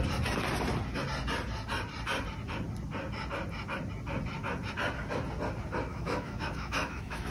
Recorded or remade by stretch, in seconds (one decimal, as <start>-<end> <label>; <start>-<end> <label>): 0.0-5.9 recorded; 5.9-7.3 remade